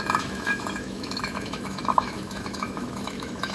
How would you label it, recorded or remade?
remade